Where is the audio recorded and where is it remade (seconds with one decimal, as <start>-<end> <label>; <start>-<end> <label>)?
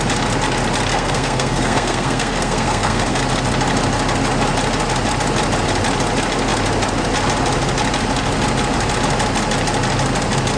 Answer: 0.0-0.9 recorded; 0.9-3.2 remade; 3.2-10.6 recorded